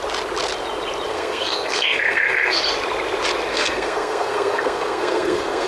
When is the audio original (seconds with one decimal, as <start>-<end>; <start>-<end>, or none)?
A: 0.0-1.1; 2.6-3.5